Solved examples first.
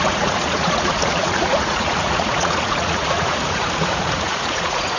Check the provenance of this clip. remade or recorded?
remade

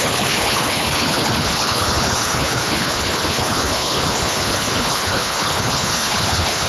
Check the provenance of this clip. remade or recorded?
remade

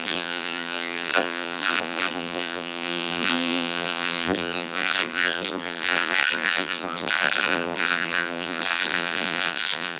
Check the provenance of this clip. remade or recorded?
remade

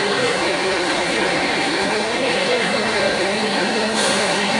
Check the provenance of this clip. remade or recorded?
remade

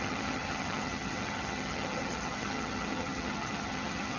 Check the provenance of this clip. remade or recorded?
remade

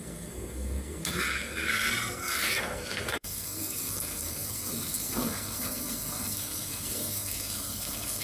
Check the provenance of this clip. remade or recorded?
remade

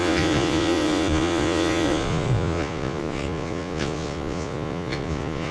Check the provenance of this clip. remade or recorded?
remade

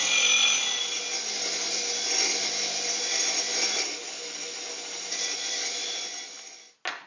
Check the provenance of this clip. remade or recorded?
recorded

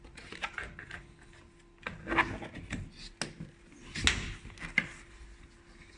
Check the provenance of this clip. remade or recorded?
recorded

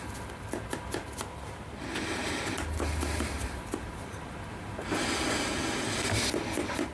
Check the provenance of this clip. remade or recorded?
recorded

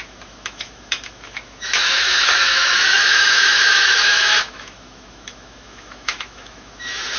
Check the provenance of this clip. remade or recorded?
remade